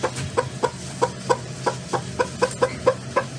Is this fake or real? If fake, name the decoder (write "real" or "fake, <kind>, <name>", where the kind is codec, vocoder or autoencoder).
real